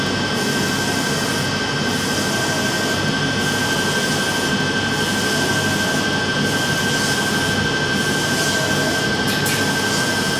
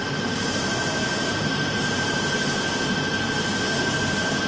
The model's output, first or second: second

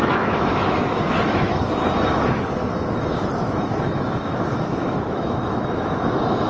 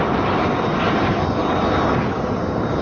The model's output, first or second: first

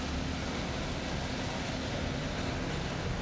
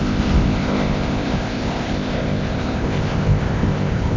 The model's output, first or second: second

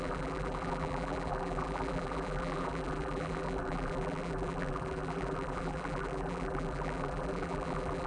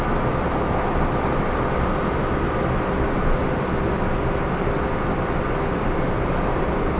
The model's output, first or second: first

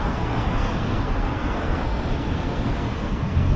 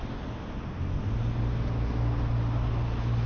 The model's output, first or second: first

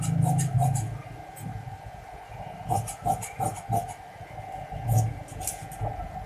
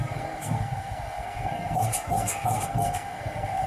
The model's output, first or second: second